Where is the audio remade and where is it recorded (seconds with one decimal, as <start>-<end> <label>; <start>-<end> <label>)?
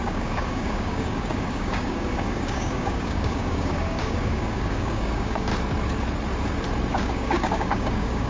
0.0-5.5 remade; 5.5-6.9 recorded; 6.9-8.3 remade